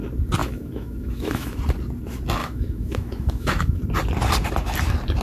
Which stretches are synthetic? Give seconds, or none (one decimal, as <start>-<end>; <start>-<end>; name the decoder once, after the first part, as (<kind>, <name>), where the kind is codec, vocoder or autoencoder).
0.4-1.6 (autoencoder, DAC-VAE); 2.4-3.8

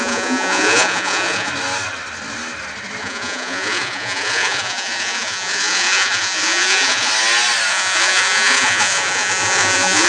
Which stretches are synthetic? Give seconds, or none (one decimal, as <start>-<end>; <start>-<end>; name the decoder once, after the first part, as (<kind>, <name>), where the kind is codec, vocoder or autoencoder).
0.0-1.5 (vocoder, Vocos); 3.0-7.1; 7.7-10.1

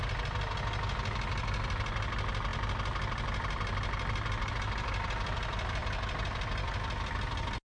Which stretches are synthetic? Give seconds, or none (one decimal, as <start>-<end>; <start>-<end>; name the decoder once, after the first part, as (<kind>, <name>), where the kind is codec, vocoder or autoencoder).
none

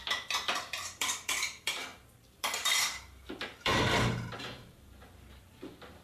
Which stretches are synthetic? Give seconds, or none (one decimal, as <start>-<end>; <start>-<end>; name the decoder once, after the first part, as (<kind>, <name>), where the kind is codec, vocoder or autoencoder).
0.0-6.0 (vocoder, BigVGAN v2)

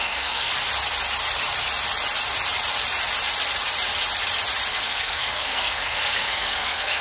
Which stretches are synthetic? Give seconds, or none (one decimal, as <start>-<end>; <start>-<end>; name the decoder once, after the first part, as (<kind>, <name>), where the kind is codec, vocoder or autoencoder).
0.0-0.5 (codec, SNAC); 4.7-7.0

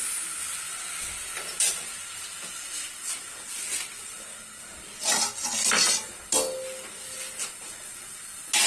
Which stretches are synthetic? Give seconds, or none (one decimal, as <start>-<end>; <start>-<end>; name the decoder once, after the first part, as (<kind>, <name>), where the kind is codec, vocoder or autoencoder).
none

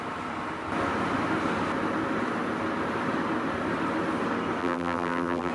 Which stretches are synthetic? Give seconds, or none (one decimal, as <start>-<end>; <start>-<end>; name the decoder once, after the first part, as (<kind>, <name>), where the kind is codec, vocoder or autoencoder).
4.6-5.5 (vocoder, BigVGAN v2)

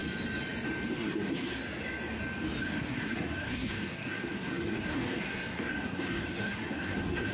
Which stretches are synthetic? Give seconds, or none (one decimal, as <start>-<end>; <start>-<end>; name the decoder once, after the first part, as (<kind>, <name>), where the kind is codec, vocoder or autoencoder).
1.0-1.6 (codec, SNAC); 2.6-7.3